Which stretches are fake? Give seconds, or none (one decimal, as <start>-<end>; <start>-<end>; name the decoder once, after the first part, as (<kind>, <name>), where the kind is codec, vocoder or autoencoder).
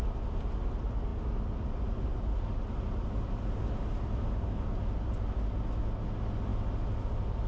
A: 6.5-7.5 (vocoder, BigVGAN v2)